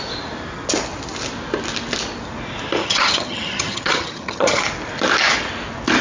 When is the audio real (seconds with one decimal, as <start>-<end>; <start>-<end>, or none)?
0.0-2.8; 4.6-6.0